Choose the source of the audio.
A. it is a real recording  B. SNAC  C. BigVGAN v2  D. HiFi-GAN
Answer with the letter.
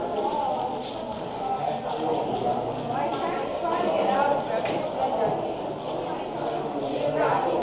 A